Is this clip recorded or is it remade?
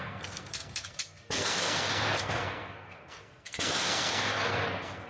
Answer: remade